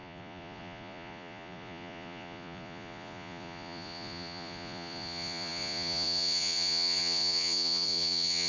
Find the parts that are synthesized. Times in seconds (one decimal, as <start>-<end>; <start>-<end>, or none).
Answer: 0.0-8.5